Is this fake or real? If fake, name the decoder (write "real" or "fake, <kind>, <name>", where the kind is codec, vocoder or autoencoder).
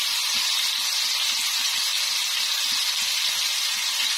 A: real